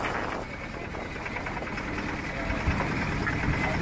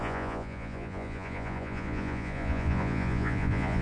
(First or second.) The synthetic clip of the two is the second